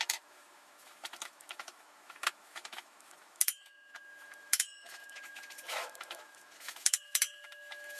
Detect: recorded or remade remade